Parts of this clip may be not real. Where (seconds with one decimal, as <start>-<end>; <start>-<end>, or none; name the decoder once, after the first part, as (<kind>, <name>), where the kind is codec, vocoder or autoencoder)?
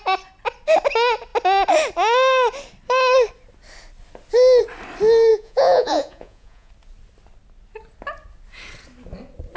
5.3-6.7 (vocoder, Vocos)